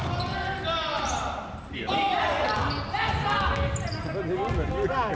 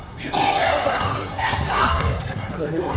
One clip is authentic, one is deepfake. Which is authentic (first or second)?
first